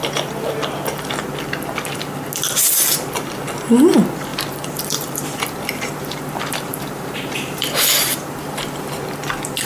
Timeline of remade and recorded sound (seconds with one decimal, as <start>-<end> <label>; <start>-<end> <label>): 0.0-4.3 recorded; 4.3-9.0 remade; 9.0-9.7 recorded